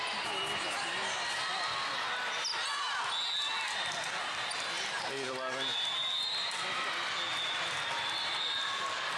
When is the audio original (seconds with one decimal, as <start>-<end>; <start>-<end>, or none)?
0.0-9.2